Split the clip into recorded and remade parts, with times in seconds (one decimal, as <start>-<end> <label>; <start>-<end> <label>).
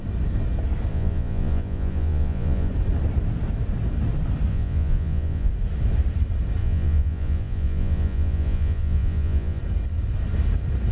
0.0-0.9 recorded; 0.9-2.7 remade; 2.7-4.5 recorded; 4.5-5.5 remade; 5.5-6.6 recorded; 6.6-9.6 remade; 9.6-10.9 recorded